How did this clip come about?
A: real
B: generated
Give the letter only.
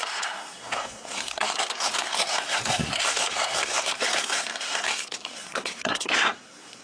B